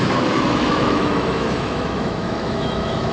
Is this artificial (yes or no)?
yes